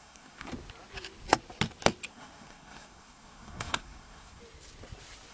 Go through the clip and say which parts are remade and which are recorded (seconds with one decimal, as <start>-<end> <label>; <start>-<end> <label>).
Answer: 0.0-0.5 remade; 0.5-2.1 recorded; 2.1-4.4 remade; 4.4-5.3 recorded